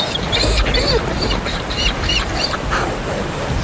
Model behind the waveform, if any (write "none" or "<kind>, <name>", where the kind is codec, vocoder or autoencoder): vocoder, BigVGAN v2